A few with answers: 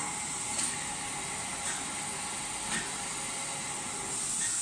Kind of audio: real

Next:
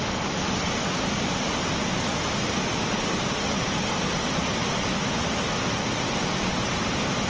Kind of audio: real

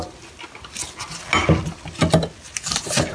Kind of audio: real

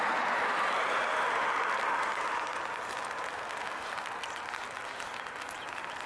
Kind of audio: real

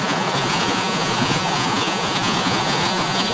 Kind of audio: fake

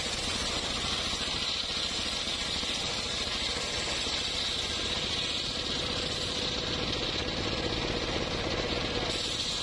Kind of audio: real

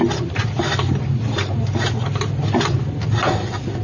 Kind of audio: real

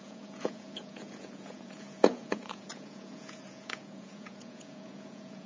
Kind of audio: fake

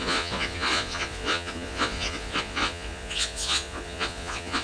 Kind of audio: fake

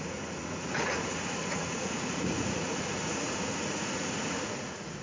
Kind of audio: fake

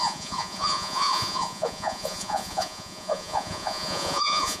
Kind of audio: fake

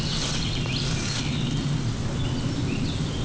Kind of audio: real